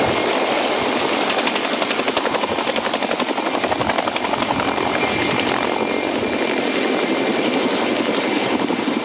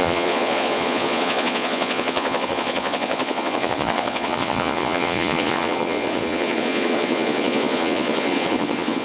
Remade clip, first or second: second